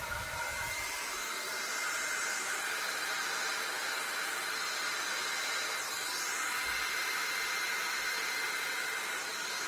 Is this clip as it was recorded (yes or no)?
no